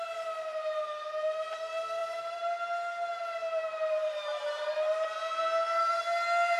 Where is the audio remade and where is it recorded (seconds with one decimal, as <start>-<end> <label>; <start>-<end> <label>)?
0.0-2.0 recorded; 2.0-6.0 remade; 6.0-6.6 recorded